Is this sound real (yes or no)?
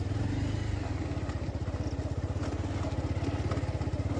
yes